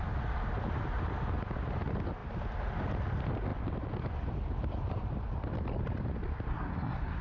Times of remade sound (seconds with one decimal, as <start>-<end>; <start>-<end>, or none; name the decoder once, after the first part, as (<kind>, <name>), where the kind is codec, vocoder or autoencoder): 6.5-7.2 (codec, SNAC)